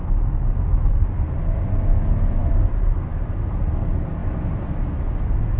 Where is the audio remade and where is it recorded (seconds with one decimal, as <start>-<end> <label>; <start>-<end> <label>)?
0.0-5.6 recorded